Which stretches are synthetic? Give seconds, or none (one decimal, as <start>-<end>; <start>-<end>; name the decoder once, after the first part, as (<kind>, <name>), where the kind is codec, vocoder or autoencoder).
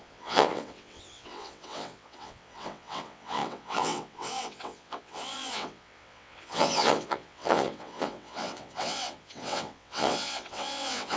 0.0-11.2 (vocoder, WaveNeXt)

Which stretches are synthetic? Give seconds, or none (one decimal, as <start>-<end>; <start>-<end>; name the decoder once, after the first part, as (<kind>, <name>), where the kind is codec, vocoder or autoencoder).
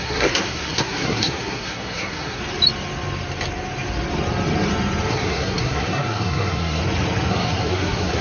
0.0-2.4 (codec, SNAC); 5.1-6.8; 7.3-8.2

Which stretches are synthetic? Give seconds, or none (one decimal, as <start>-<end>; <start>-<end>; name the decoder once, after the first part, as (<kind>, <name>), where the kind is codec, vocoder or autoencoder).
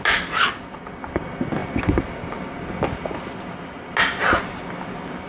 none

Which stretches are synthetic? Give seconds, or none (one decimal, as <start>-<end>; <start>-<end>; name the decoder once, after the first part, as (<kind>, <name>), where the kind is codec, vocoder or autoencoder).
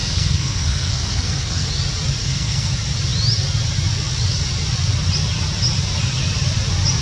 0.0-1.7 (codec, SNAC); 2.2-2.7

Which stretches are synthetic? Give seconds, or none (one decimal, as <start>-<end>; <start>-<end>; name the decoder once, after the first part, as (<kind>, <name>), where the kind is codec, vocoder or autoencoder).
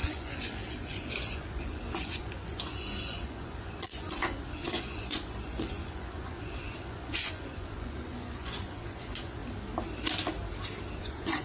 0.0-9.4 (vocoder, Vocos); 11.0-11.4